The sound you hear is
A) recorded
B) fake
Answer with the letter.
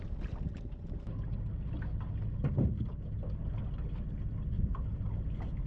A